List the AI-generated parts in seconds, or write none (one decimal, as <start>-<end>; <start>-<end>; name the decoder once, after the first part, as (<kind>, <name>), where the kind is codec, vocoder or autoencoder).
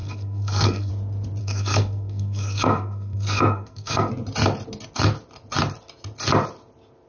0.0-0.9 (codec, SNAC); 1.4-4.1